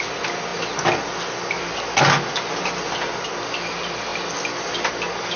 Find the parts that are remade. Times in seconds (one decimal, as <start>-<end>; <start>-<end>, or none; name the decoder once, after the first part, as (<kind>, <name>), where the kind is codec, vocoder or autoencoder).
none

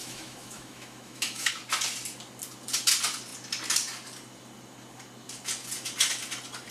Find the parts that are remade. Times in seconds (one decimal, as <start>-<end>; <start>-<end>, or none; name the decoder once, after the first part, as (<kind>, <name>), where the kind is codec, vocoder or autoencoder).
0.0-1.5 (autoencoder, DAC-VAE)

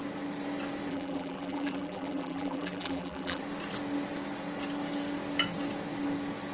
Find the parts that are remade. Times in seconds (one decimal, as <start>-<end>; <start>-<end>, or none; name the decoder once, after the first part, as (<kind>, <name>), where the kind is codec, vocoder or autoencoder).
0.9-3.4 (vocoder, BigVGAN v2)